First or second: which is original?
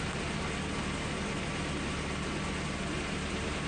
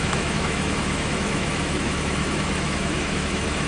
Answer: first